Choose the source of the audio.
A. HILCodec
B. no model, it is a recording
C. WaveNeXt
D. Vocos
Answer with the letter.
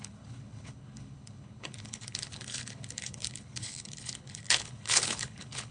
A